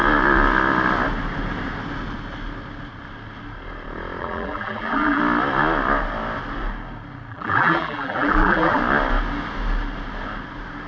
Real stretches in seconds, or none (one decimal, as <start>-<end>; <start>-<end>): 0.0-4.2; 5.2-7.3; 8.8-10.9